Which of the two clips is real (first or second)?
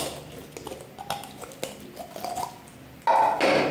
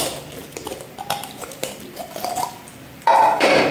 first